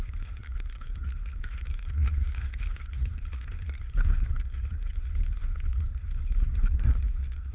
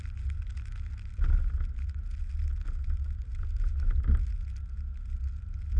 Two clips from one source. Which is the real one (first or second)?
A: second